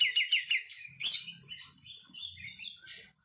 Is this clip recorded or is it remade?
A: recorded